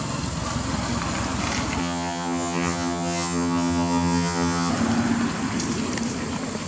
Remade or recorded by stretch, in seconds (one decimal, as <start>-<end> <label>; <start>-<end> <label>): 0.0-1.8 recorded; 1.8-4.7 remade; 4.7-6.7 recorded